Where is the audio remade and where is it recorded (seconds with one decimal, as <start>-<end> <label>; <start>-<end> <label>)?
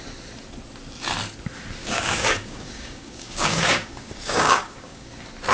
0.0-1.8 recorded; 1.8-5.1 remade; 5.1-5.5 recorded